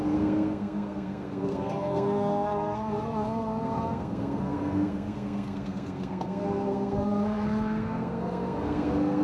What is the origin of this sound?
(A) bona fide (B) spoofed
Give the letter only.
B